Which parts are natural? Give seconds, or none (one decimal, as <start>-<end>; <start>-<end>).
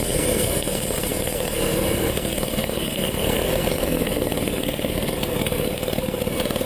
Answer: none